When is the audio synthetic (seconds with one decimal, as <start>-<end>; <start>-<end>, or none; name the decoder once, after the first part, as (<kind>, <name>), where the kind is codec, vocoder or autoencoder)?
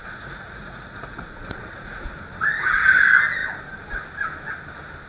0.0-2.0 (vocoder, Vocos)